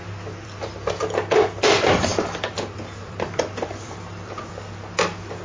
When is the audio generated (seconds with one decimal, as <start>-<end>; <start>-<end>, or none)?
0.0-1.0; 2.1-4.8